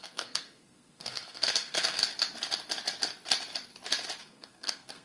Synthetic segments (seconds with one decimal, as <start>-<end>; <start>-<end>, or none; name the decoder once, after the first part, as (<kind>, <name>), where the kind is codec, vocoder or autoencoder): 0.0-2.0 (codec, SNAC); 4.2-5.0